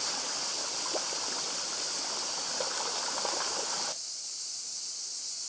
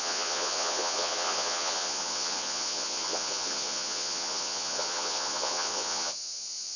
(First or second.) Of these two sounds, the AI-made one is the second